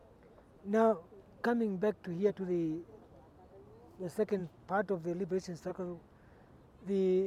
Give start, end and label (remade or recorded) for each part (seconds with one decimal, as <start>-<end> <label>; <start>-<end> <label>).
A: 0.0-7.3 recorded